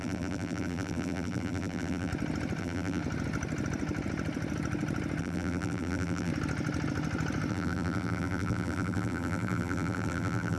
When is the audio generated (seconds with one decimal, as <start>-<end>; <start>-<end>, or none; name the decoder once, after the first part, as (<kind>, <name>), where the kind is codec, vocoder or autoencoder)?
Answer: 0.0-2.1 (vocoder, BigVGAN v2); 2.6-3.0; 5.2-6.3; 7.5-10.6